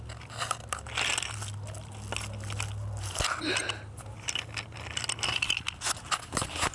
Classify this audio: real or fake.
real